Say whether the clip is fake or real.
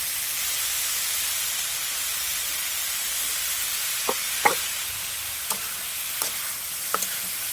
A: real